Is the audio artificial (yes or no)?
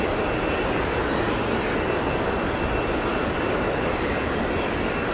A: no